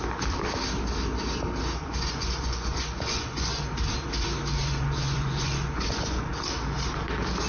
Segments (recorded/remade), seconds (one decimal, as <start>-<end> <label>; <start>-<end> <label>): 0.0-1.8 recorded; 1.8-3.6 remade; 3.6-4.6 recorded; 4.6-6.3 remade; 6.3-7.5 recorded